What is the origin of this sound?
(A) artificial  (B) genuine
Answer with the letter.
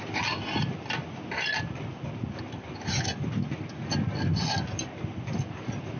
B